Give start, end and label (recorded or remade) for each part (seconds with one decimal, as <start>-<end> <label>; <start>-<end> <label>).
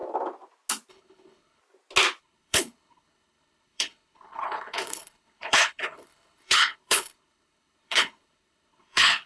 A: 0.0-0.9 recorded; 0.9-1.6 remade; 1.6-2.2 recorded; 2.2-9.3 remade